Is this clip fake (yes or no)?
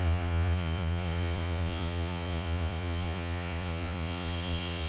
yes